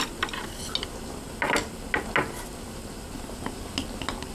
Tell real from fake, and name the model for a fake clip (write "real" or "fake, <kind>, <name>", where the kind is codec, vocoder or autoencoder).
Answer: real